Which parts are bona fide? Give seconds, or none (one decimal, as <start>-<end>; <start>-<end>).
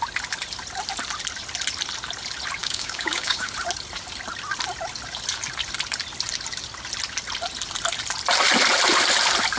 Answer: 0.0-2.6; 3.5-9.6